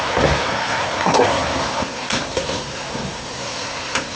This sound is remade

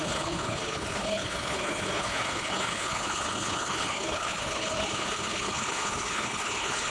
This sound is remade